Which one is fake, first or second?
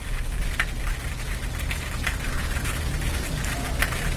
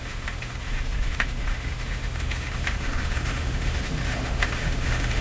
second